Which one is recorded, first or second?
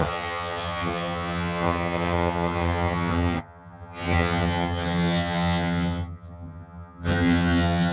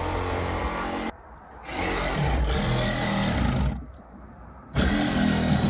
second